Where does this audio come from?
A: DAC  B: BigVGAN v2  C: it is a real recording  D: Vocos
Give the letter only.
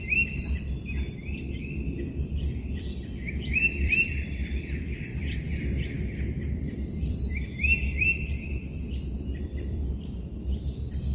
B